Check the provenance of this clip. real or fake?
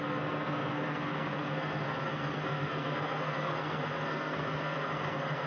fake